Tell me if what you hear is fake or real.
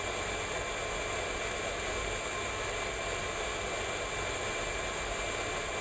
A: real